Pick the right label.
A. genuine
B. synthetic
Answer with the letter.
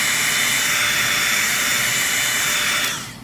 A